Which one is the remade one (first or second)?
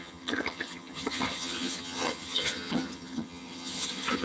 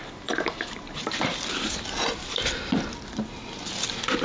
first